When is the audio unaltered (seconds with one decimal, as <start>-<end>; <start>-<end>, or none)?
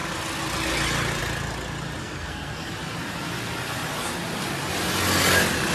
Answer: 0.0-2.0; 2.7-5.7